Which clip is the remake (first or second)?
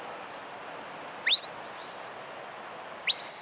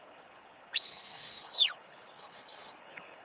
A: second